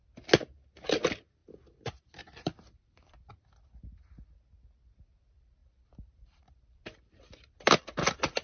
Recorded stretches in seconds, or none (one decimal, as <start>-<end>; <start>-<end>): 0.0-1.4; 3.3-5.6; 7.8-8.4

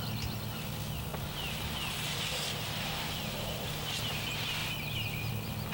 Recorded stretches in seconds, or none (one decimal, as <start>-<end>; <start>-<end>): 0.0-1.1; 3.7-5.7